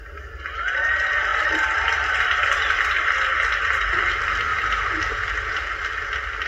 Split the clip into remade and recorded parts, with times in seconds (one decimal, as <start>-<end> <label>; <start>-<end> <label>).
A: 0.0-4.5 remade; 4.5-5.1 recorded; 5.1-6.5 remade